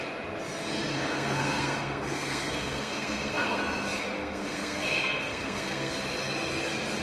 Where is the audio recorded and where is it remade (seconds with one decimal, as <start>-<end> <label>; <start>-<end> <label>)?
0.0-0.9 recorded; 0.9-3.6 remade; 3.6-4.2 recorded; 4.2-5.9 remade; 5.9-7.0 recorded